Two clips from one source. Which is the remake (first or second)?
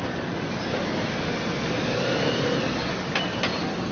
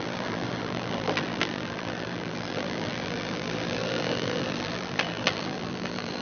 second